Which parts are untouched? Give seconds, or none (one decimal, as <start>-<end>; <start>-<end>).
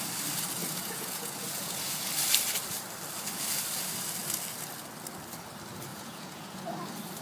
0.0-0.6; 2.1-5.9; 6.6-7.2